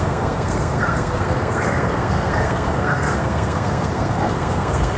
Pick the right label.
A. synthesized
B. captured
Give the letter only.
A